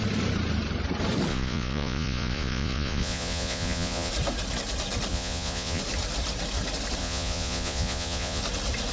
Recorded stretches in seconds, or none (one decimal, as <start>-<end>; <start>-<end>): 0.0-1.3; 4.1-5.1; 5.8-7.0; 8.4-8.9